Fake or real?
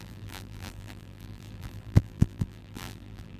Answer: fake